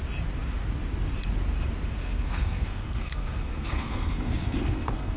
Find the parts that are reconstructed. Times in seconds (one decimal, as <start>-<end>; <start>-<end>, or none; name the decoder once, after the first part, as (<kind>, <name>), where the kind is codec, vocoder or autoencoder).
2.0-5.2 (codec, SNAC)